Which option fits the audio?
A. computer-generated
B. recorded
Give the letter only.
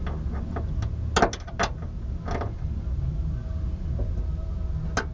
B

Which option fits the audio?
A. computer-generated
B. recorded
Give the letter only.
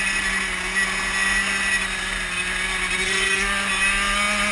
B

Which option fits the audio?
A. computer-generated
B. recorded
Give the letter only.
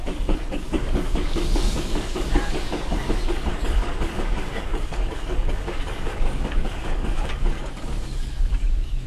A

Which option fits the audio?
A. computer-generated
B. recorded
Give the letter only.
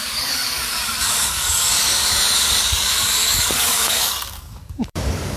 A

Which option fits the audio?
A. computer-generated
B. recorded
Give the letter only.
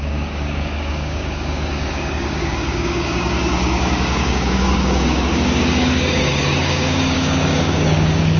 A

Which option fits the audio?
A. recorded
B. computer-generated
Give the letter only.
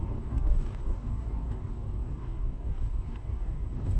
B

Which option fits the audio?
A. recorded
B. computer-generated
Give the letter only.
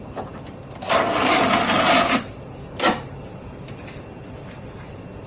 A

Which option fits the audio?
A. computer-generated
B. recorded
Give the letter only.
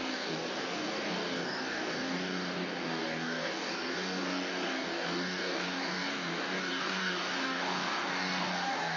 A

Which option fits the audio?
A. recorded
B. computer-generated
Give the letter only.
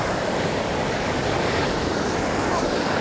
B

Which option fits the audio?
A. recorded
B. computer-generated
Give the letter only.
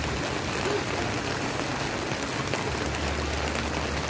A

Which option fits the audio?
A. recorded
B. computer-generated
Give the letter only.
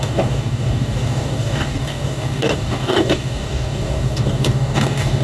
B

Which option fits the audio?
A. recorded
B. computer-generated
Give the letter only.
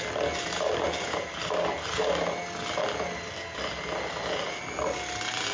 A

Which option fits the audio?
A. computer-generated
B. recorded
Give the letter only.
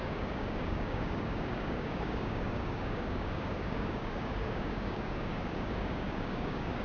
A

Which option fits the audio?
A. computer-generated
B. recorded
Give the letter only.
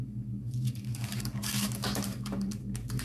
A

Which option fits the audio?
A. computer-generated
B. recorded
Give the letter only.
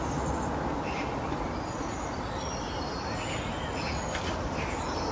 B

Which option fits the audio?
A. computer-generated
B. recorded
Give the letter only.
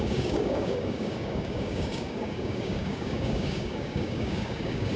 A